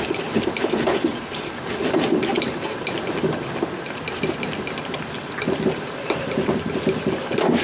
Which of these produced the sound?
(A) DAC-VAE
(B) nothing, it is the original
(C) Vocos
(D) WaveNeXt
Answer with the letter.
B